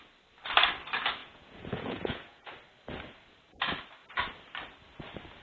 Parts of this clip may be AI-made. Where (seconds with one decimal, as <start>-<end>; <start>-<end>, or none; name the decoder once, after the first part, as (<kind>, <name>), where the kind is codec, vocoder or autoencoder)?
1.2-2.5 (vocoder, Vocos)